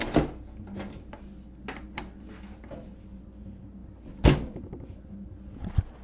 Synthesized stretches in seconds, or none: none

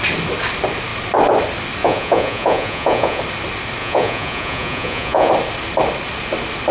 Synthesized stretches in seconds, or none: 1.8-3.2; 3.8-5.3

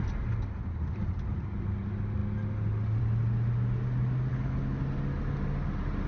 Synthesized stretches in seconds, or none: 4.3-4.8

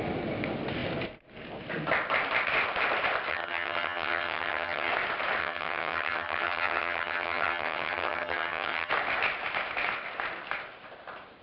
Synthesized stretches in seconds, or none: 3.3-4.9; 5.4-8.9